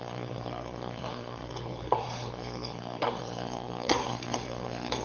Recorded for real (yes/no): no